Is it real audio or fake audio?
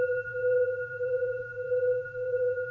fake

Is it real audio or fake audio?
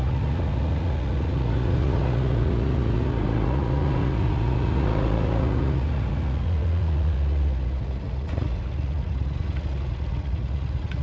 fake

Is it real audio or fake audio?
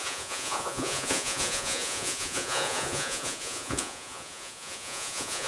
fake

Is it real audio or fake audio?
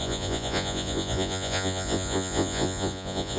fake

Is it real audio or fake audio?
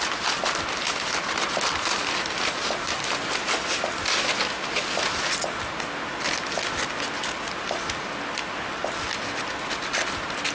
real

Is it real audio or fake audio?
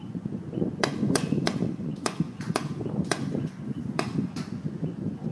fake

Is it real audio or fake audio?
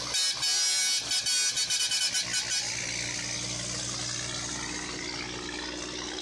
real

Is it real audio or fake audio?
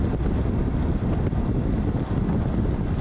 real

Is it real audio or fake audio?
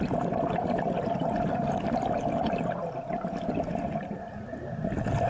real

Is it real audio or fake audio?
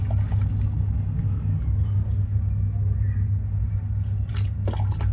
real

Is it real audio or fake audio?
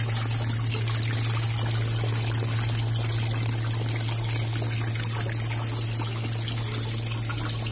real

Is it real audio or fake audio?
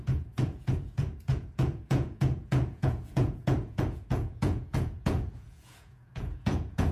fake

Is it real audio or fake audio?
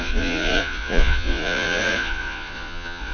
fake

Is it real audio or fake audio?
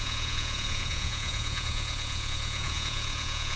fake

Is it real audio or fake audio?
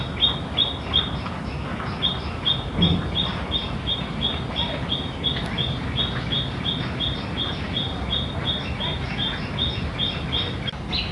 real